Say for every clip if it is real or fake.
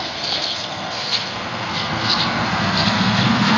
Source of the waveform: fake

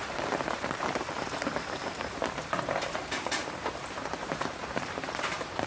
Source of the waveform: fake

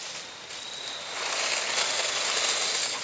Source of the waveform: real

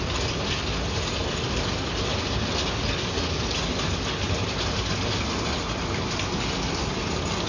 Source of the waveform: real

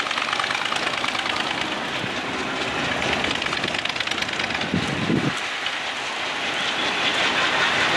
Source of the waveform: real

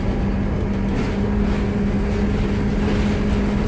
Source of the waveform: real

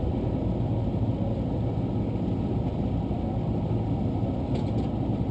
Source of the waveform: real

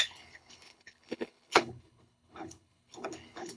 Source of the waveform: fake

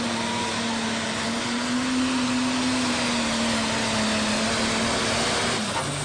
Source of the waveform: real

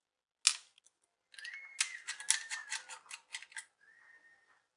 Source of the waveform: real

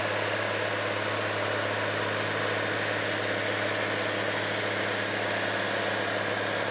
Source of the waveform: real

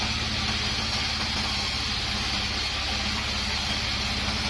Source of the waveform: real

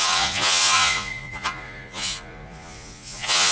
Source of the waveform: fake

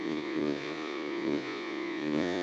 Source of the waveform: fake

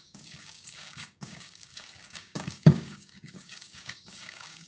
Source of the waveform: fake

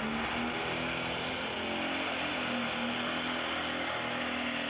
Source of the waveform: real